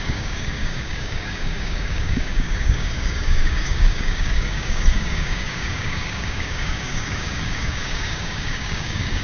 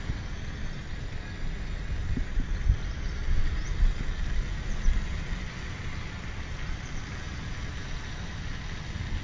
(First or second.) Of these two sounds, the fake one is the first